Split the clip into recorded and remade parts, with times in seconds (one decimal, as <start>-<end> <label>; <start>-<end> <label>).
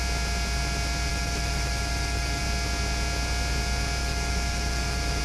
0.0-1.1 recorded; 1.1-2.4 remade; 2.4-4.0 recorded; 4.0-5.2 remade